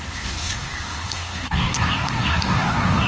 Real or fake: fake